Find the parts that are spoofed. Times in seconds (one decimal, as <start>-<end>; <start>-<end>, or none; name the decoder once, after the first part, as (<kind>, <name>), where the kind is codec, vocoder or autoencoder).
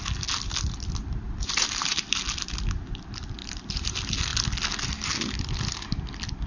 1.4-2.2 (vocoder, BigVGAN v2); 3.4-3.9